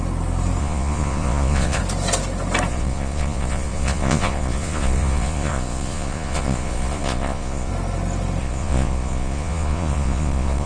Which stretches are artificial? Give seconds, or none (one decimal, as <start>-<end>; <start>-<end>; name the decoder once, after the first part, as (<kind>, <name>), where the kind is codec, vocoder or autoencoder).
0.6-1.8 (vocoder, Vocos); 2.7-7.7; 8.4-10.7